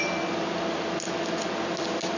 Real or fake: real